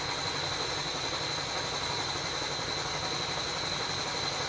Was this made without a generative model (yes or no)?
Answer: yes